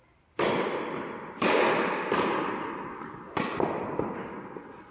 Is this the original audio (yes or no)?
yes